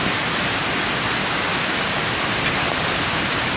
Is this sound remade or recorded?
recorded